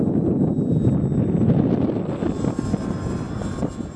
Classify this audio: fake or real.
real